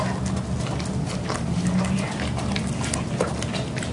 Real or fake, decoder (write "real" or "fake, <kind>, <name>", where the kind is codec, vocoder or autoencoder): real